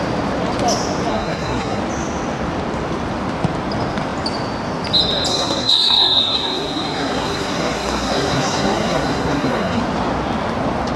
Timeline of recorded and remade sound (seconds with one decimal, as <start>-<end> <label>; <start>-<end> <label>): 0.0-1.1 recorded; 1.1-1.8 remade; 1.8-5.3 recorded; 5.3-9.8 remade; 9.8-11.0 recorded